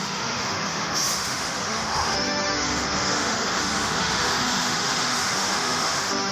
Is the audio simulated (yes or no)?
yes